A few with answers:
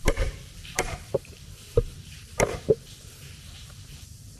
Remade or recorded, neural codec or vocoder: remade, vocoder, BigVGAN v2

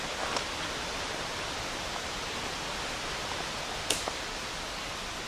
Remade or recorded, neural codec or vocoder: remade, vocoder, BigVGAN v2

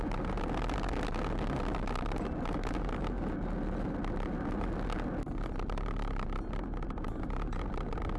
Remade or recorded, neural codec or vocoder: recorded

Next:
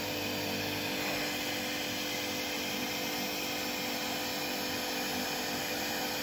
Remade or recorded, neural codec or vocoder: recorded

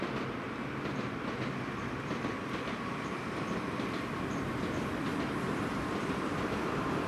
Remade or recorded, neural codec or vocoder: remade, vocoder, BigVGAN v2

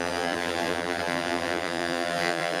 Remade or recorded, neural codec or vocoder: remade, vocoder, BigVGAN v2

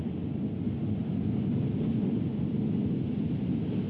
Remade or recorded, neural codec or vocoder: remade, vocoder, BigVGAN v2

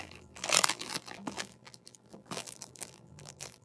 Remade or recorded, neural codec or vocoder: remade, vocoder, BigVGAN v2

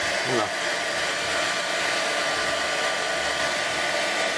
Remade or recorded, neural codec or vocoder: recorded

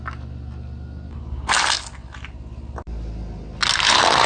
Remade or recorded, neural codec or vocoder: recorded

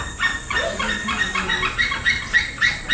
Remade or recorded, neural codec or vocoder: recorded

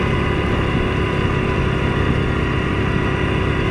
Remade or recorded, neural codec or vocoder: recorded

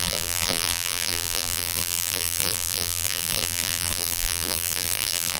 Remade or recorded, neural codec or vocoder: remade, vocoder, BigVGAN v2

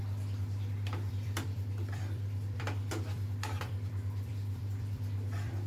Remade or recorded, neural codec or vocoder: remade, vocoder, BigVGAN v2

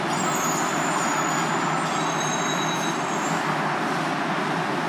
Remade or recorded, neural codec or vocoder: recorded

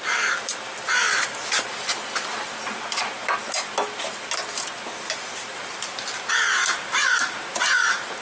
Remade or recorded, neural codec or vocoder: recorded